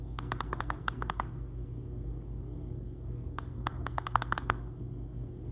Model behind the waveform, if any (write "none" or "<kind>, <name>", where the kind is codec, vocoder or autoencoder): codec, SNAC